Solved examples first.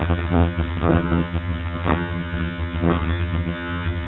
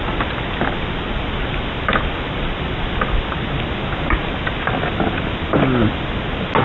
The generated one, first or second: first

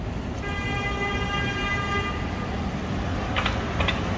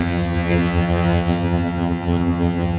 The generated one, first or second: second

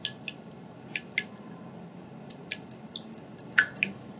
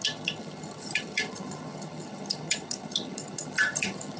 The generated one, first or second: second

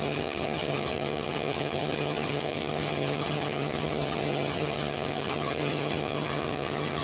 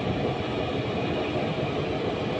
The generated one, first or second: first